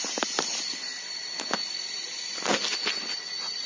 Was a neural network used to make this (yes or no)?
no